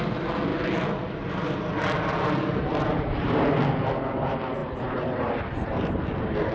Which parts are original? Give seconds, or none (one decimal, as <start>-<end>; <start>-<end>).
0.0-2.7; 3.4-4.6; 5.9-6.5